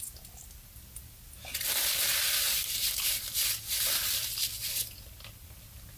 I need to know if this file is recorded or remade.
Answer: remade